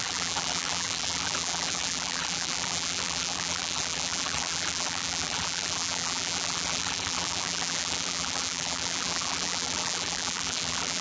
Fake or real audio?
fake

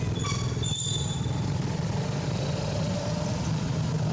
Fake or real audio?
fake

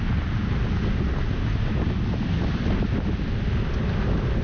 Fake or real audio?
real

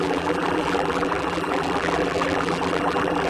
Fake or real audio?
fake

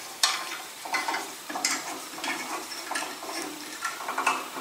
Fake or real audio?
fake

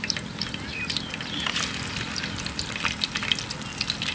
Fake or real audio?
real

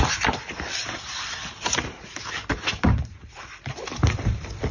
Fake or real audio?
fake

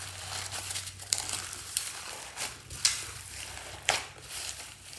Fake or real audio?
fake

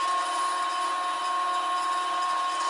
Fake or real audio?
real